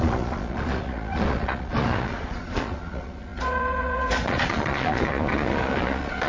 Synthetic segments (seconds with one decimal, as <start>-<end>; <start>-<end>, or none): 0.0-6.3